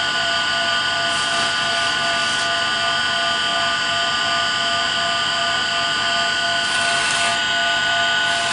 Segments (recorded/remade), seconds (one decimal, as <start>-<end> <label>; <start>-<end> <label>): 0.0-8.5 recorded